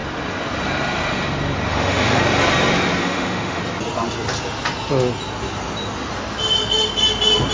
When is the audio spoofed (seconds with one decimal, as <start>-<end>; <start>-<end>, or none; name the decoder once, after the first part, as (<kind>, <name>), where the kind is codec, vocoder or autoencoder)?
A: 1.7-2.2 (autoencoder, DAC-VAE); 3.0-3.6